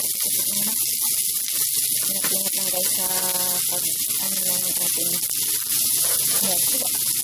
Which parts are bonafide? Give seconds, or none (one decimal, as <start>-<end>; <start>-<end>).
0.0-5.7; 6.8-7.2

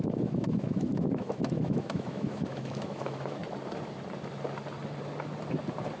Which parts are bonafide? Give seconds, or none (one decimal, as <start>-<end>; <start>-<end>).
3.4-6.0

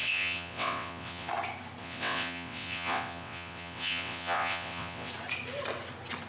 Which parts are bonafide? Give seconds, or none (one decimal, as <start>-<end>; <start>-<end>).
1.3-1.8; 5.1-6.3

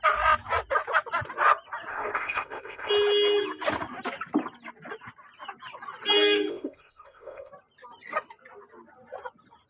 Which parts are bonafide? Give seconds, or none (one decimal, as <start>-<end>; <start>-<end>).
0.0-1.9; 2.9-6.5; 7.5-9.7

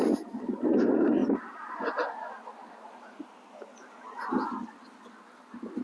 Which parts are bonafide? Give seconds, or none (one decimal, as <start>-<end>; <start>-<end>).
0.0-5.8

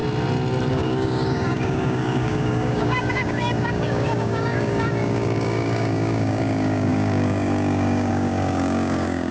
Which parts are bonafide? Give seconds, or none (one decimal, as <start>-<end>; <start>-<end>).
0.0-0.7

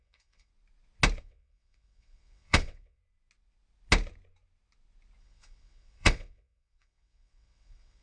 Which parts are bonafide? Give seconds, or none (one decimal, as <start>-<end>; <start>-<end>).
0.5-1.2; 3.0-5.2

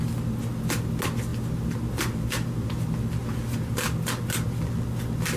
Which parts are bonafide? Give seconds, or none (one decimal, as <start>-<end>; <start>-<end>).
0.0-5.4